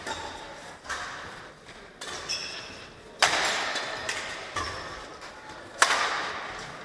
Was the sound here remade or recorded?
recorded